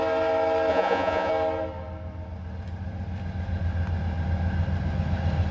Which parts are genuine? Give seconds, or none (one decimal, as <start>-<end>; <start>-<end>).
0.0-0.7; 1.3-5.5

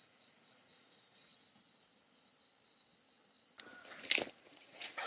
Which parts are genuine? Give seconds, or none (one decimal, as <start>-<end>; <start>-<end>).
1.3-4.4

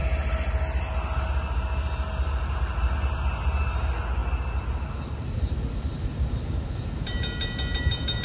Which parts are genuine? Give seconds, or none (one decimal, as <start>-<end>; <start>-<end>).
0.0-8.2